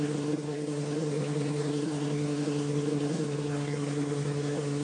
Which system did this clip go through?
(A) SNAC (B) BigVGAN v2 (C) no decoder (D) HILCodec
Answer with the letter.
A